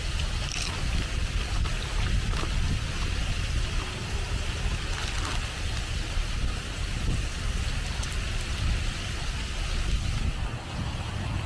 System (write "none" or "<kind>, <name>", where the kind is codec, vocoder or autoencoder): none